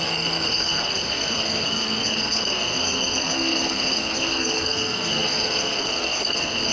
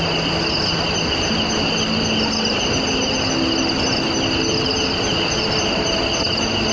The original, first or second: second